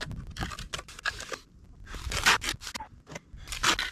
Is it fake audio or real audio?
real